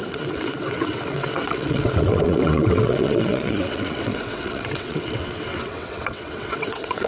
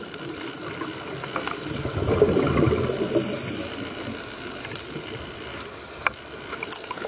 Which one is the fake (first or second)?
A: first